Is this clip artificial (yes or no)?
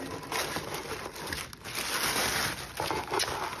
no